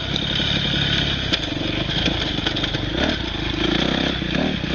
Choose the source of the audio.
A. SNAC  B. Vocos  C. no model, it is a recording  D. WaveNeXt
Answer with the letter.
C